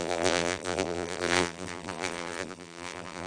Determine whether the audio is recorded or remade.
remade